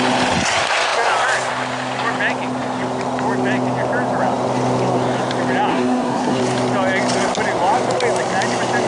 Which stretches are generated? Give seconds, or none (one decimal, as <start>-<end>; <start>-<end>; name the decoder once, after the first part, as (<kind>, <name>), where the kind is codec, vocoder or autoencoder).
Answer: 5.7-6.4 (codec, SNAC)